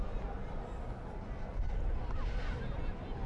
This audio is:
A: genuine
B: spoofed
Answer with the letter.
A